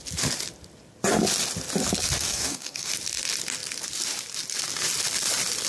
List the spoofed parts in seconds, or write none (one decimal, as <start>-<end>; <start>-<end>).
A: 2.2-2.9

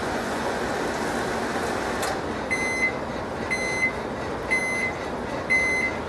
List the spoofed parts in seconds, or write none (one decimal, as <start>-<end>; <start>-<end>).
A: 0.0-0.6

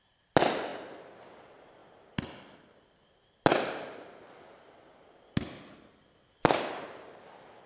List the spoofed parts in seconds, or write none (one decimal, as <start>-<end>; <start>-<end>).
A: none

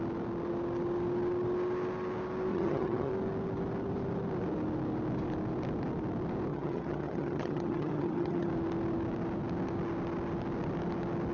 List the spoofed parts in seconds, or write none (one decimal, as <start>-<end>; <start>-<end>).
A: 2.5-3.1; 6.5-8.5

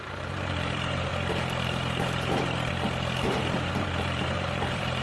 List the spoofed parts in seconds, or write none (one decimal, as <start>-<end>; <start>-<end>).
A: 0.0-1.1; 3.8-5.0

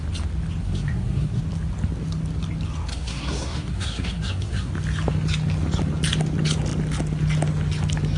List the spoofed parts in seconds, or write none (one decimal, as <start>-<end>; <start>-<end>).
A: 0.6-1.4; 2.9-4.7